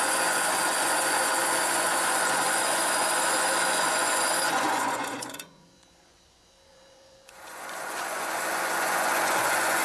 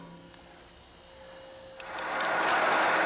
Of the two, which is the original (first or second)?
second